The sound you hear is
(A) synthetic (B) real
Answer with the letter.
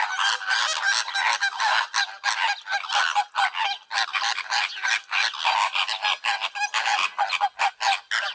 B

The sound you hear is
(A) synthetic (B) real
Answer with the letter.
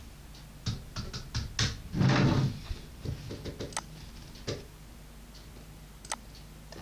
B